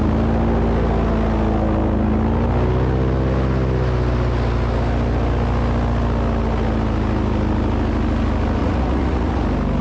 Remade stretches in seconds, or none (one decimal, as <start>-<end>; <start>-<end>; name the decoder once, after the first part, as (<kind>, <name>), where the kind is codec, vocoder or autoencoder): 8.6-9.4 (vocoder, Vocos)